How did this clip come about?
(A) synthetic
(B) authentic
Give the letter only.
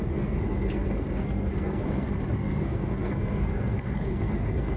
A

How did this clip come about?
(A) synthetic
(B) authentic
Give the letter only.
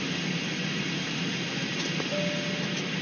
B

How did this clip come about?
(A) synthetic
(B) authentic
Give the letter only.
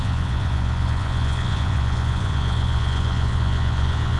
A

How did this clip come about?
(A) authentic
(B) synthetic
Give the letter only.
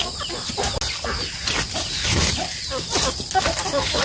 A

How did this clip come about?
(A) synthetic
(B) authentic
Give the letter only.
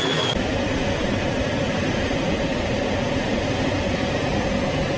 B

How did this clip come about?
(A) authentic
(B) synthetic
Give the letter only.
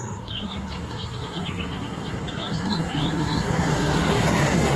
B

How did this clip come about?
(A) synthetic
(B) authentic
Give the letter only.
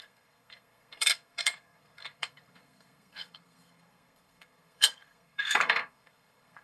A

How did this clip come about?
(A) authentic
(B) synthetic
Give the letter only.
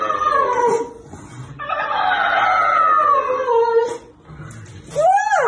A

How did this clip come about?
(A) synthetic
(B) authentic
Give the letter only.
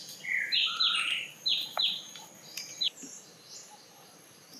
B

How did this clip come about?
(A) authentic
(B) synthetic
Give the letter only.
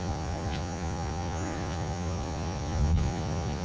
B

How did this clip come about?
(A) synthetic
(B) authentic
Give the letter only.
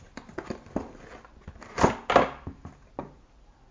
B